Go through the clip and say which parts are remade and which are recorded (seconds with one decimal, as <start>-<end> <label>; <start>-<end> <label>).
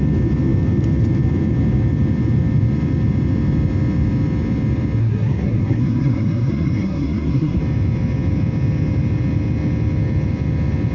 0.0-5.0 recorded; 5.0-7.6 remade; 7.6-10.9 recorded